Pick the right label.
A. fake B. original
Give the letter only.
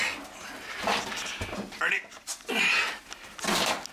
B